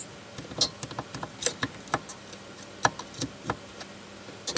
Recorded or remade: recorded